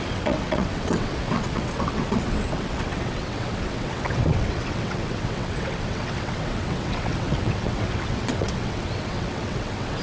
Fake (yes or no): yes